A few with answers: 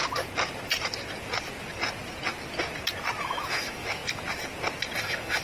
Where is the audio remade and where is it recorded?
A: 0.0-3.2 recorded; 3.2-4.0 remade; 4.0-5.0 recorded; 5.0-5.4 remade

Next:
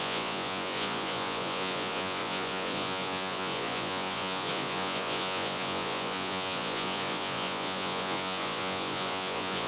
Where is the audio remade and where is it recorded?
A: 0.0-9.7 remade

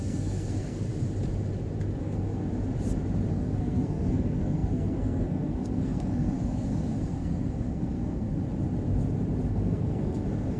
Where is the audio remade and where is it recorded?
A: 0.0-0.9 remade; 0.9-2.0 recorded; 2.0-2.4 remade; 2.4-3.3 recorded; 3.3-8.4 remade; 8.4-9.5 recorded; 9.5-10.6 remade